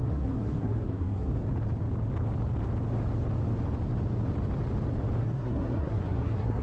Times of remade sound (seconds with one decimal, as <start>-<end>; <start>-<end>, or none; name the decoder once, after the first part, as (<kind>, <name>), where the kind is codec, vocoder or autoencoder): 0.0-1.3 (codec, SNAC); 5.2-6.6